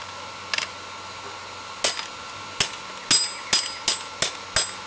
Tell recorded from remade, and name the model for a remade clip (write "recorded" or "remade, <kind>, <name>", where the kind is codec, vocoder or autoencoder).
recorded